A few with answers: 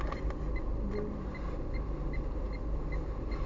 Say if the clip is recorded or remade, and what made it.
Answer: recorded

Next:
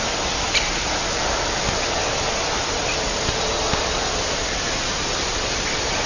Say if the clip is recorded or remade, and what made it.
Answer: recorded